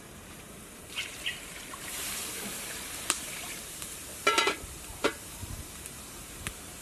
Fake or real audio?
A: fake